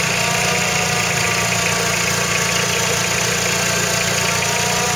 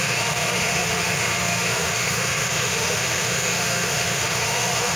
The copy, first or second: second